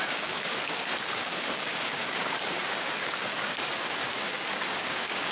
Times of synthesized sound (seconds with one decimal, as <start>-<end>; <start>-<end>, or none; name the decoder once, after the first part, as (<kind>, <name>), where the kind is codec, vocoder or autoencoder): 0.0-5.3 (codec, DAC)